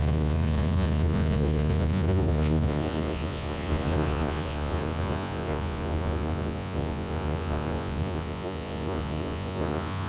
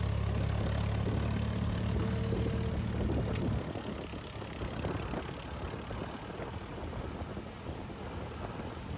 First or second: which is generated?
first